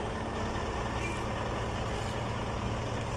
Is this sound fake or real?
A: real